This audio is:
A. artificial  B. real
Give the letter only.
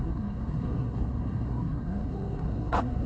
A